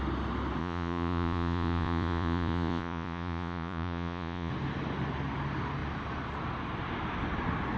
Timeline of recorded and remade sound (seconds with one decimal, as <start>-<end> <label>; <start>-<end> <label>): 0.0-0.6 recorded; 0.6-4.5 remade; 4.5-7.8 recorded